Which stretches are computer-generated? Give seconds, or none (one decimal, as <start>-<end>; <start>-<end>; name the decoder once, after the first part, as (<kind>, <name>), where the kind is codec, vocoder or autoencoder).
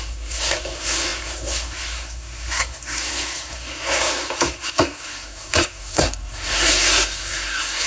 0.0-7.9 (codec, SNAC)